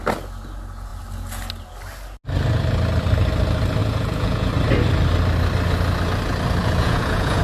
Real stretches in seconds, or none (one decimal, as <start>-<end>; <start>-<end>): 0.0-3.8; 4.5-6.6